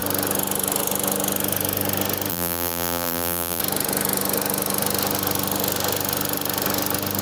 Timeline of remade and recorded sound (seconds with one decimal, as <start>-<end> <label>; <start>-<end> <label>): 0.0-2.3 recorded; 2.3-3.6 remade; 3.6-7.2 recorded